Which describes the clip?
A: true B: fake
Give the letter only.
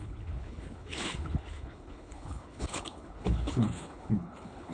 B